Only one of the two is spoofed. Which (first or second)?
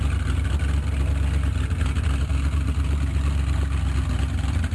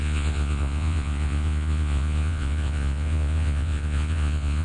second